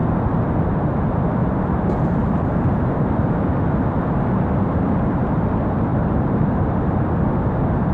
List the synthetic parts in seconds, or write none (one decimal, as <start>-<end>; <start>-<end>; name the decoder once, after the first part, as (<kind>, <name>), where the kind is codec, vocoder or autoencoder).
1.4-5.3 (vocoder, BigVGAN v2); 5.9-6.4